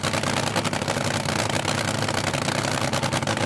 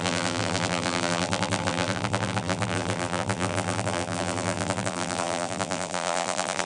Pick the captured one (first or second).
first